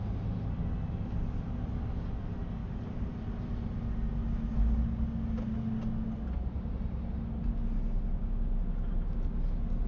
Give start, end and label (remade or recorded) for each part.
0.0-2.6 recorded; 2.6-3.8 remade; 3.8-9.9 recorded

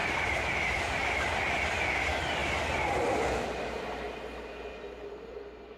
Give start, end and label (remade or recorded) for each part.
0.0-1.0 remade; 1.0-5.8 recorded

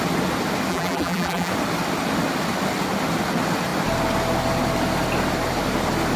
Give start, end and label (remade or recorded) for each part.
0.0-0.7 recorded; 0.7-1.5 remade; 1.5-6.2 recorded

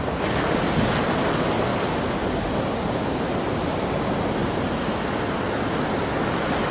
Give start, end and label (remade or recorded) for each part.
0.0-1.7 recorded; 1.7-4.0 remade; 4.0-4.4 recorded; 4.4-5.2 remade; 5.2-6.7 recorded